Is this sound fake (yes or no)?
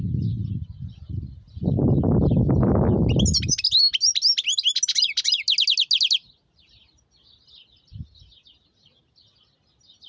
no